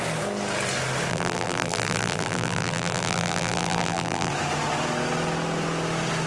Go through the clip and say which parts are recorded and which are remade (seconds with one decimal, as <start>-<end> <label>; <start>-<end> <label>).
0.0-1.1 recorded; 1.1-4.3 remade; 4.3-6.3 recorded